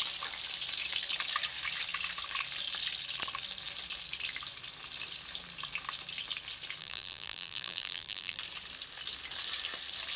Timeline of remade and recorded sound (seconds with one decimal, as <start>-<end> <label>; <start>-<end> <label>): 0.0-6.8 recorded; 6.8-8.4 remade; 8.4-10.2 recorded